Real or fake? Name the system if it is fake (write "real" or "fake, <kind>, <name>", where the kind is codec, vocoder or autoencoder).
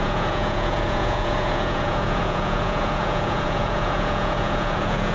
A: fake, vocoder, Vocos